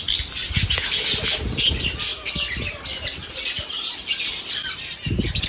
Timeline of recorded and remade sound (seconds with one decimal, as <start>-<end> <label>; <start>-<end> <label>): 0.0-5.5 recorded